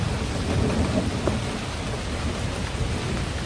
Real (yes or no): yes